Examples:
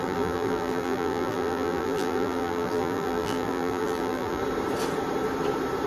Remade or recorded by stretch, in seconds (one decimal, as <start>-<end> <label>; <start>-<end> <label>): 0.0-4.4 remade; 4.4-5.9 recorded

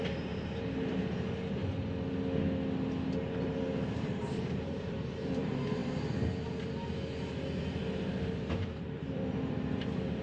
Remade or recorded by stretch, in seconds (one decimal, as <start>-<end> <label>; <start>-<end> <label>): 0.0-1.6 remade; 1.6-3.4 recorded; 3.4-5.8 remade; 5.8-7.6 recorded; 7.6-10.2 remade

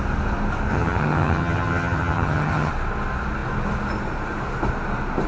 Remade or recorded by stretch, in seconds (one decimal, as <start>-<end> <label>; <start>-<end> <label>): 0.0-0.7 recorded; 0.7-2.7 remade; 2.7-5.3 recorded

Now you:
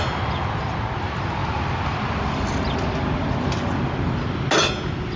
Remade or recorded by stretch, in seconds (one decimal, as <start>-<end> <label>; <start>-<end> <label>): 0.0-5.2 recorded

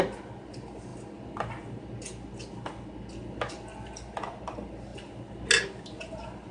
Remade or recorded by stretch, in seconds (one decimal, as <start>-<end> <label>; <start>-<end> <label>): 0.0-6.5 recorded

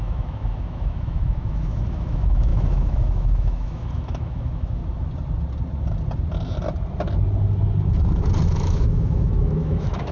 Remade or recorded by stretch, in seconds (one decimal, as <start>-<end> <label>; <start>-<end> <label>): 0.0-4.8 remade; 4.8-8.5 recorded; 8.5-10.1 remade